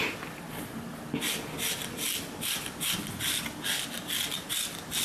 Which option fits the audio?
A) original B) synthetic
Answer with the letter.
A